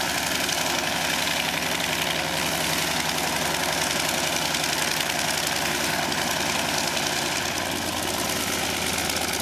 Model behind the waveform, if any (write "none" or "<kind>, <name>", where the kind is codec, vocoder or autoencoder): none